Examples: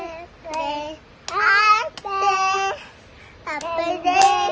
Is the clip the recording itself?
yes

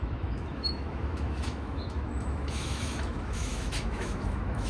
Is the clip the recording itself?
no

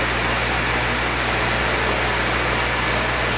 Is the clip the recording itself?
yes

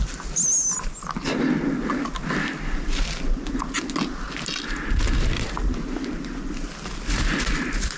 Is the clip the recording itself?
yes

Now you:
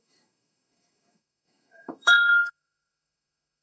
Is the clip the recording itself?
no